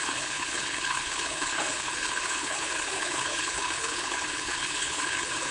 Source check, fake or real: fake